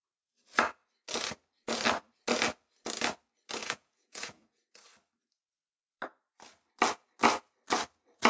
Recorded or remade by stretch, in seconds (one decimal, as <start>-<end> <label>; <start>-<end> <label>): 0.0-3.6 recorded; 3.6-4.6 remade; 4.6-8.3 recorded